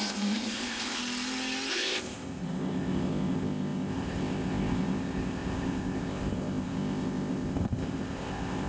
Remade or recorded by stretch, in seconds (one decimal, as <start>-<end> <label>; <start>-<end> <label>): 0.0-1.0 remade; 1.0-1.7 recorded; 1.7-8.7 remade